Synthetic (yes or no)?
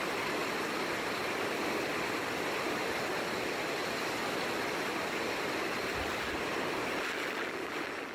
no